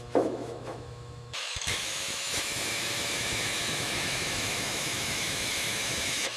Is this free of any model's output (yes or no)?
no